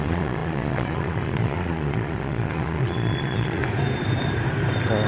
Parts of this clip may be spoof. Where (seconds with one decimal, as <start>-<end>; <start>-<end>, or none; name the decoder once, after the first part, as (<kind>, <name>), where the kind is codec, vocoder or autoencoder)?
0.0-3.6 (vocoder, Vocos)